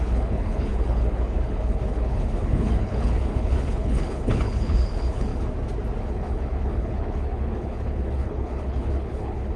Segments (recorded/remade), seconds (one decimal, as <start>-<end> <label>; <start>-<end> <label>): 0.0-5.3 remade; 5.3-6.0 recorded; 6.0-9.6 remade